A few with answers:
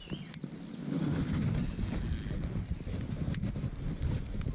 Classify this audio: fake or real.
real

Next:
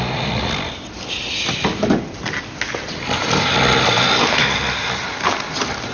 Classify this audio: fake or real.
real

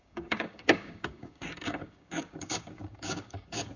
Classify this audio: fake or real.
fake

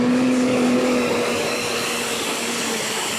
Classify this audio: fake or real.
fake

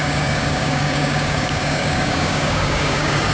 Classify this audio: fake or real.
fake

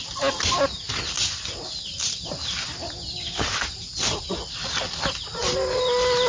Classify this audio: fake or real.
real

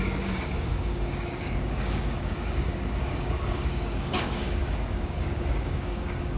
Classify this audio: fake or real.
fake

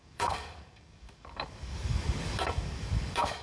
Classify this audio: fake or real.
fake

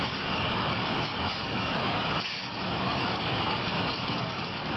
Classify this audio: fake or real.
fake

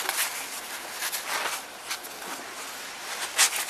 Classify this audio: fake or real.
real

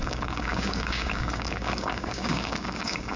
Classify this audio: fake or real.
fake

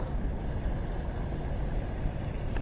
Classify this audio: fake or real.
real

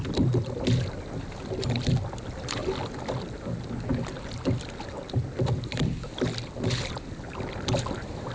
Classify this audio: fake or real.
real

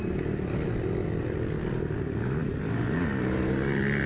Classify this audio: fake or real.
real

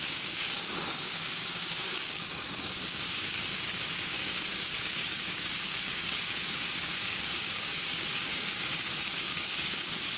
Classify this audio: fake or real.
fake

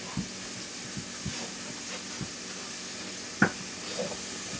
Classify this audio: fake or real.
real